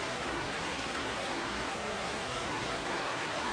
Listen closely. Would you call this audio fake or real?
fake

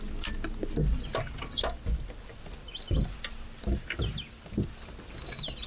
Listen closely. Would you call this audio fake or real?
real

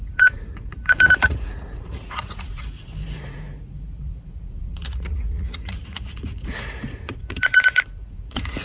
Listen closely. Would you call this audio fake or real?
fake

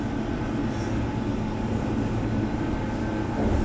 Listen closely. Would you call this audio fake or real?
real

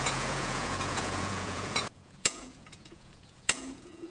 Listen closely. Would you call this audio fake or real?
fake